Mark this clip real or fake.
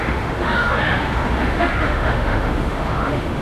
fake